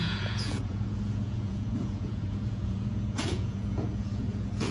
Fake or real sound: fake